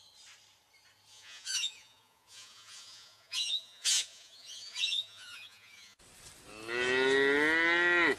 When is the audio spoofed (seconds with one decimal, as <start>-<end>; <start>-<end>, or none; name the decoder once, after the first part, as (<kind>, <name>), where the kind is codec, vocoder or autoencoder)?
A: 1.1-6.0 (vocoder, Vocos)